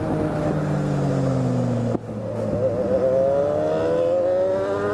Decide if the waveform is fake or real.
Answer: real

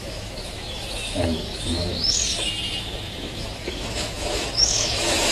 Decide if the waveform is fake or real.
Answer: fake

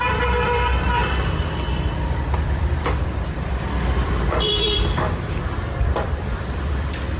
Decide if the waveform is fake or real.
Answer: fake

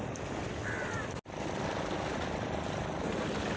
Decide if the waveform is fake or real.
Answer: real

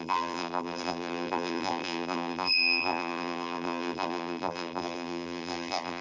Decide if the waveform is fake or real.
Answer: fake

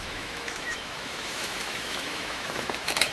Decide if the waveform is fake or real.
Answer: fake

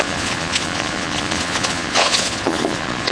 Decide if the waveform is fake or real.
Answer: fake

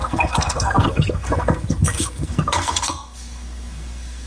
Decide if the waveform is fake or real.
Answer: fake